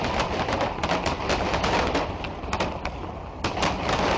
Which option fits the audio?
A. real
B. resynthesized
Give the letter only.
A